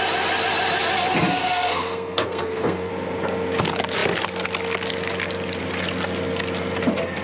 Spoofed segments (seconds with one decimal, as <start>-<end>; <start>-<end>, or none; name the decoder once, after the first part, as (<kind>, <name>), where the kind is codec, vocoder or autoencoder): 1.4-2.9 (codec, SNAC)